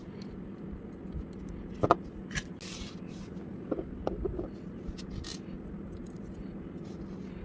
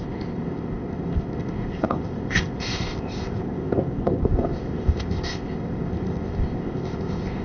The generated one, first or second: second